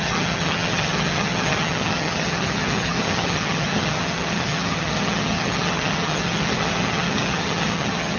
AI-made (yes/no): yes